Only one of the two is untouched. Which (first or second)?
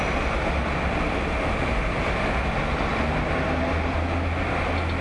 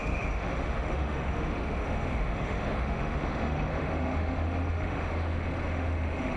first